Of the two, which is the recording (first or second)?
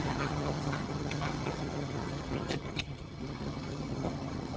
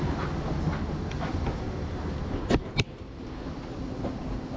second